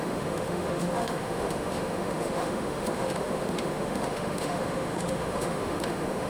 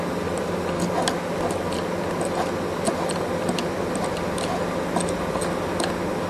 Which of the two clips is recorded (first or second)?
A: second